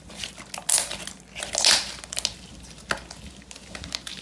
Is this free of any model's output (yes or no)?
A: yes